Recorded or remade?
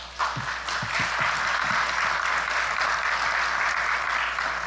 recorded